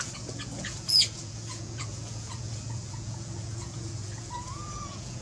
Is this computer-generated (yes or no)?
yes